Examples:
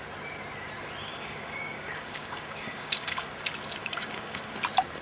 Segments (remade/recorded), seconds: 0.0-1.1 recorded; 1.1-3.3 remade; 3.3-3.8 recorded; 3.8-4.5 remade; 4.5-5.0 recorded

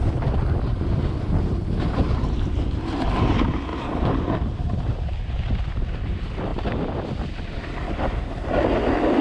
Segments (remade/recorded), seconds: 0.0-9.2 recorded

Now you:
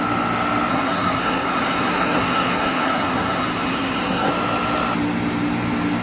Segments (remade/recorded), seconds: 0.0-0.7 recorded; 0.7-4.3 remade; 4.3-6.0 recorded

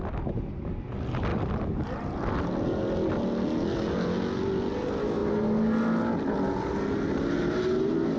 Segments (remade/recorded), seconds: 0.0-8.2 recorded

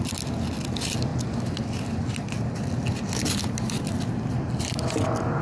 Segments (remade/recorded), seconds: 0.0-5.4 recorded

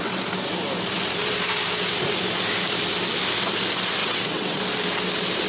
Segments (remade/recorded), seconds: 0.0-4.0 recorded; 4.0-4.6 remade; 4.6-5.5 recorded